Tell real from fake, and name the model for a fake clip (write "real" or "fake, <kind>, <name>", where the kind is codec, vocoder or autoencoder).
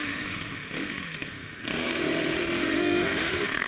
fake, autoencoder, DAC-VAE